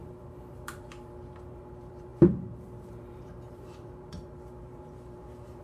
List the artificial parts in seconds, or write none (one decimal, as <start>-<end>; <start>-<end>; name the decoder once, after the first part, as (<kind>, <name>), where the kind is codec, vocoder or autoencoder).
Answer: 0.0-5.6 (vocoder, BigVGAN v2)